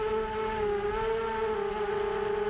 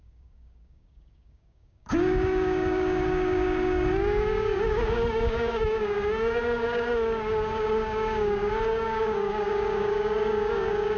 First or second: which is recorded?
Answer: first